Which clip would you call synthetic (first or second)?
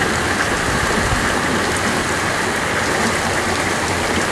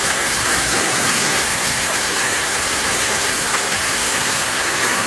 second